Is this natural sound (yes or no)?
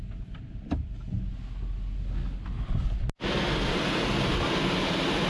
yes